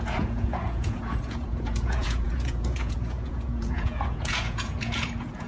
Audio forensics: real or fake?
fake